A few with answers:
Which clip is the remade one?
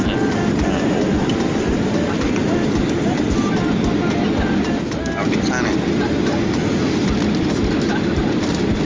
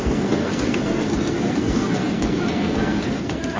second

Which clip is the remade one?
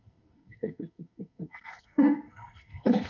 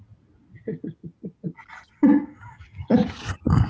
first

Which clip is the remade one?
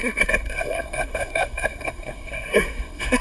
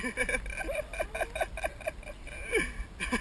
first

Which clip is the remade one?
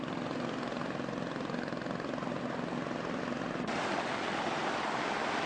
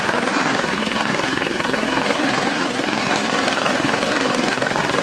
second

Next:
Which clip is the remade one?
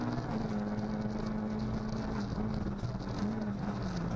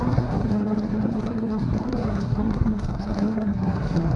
second